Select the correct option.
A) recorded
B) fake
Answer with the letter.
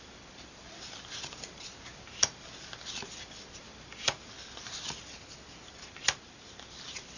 A